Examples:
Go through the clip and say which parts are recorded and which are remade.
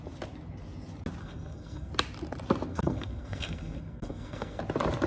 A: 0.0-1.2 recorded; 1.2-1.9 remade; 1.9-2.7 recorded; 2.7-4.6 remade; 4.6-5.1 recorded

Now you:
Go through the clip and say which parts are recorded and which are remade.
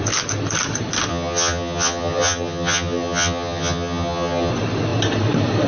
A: 0.0-1.1 recorded; 1.1-4.5 remade; 4.5-5.7 recorded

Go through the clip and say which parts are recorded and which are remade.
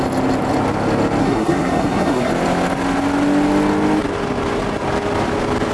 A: 0.0-1.2 recorded; 1.2-2.3 remade; 2.3-5.7 recorded